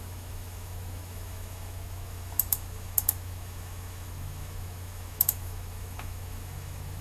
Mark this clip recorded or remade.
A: remade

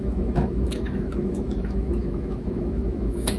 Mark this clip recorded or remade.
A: remade